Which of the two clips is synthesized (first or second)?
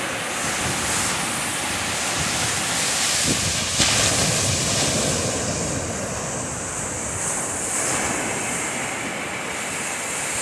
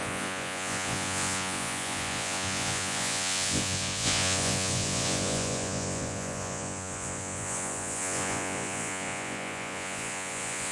second